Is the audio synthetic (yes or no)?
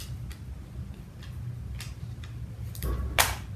no